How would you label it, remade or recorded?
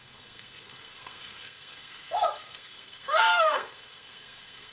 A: remade